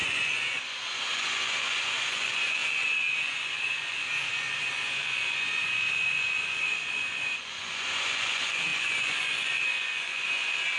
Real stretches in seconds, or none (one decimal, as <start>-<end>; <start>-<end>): none